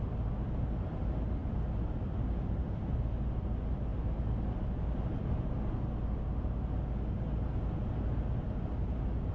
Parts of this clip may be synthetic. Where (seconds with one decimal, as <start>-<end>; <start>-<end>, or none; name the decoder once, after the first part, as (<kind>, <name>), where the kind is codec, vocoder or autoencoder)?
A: none